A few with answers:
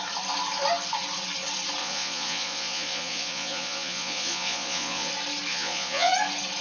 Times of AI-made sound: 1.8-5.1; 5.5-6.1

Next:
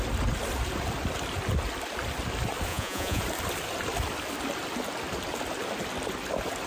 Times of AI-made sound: 2.7-3.2

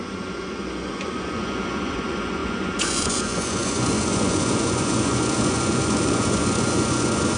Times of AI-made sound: 0.0-7.4

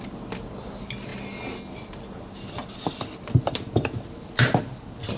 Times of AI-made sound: none

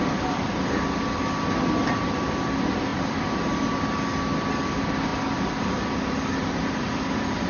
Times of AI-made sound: none

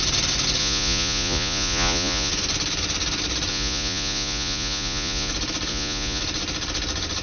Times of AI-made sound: 0.6-2.3; 3.5-5.3; 5.7-6.2

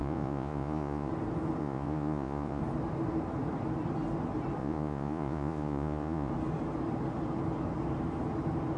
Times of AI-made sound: 0.0-1.1; 1.6-2.6; 4.6-6.3